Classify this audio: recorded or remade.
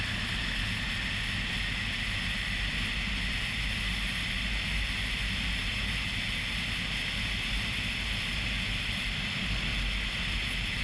recorded